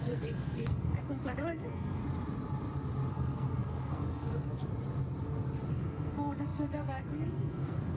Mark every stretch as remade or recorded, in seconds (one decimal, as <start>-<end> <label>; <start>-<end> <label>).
0.0-2.0 remade; 2.0-3.1 recorded; 3.1-4.7 remade; 4.7-5.7 recorded; 5.7-8.0 remade